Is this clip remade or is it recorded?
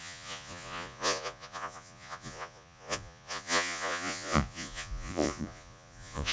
remade